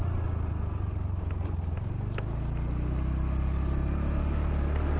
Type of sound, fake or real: real